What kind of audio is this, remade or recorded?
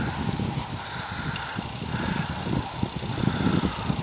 recorded